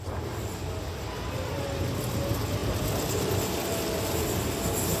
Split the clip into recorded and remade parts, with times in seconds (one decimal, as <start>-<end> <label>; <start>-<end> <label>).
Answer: 0.0-5.0 recorded